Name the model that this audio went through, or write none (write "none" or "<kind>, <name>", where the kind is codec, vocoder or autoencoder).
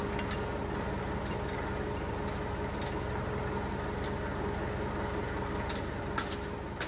none